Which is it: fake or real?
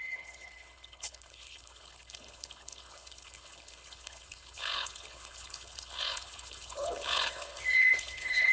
fake